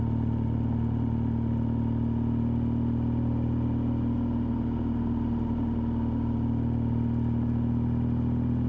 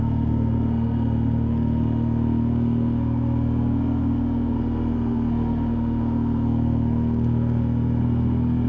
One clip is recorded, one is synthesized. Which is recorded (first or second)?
first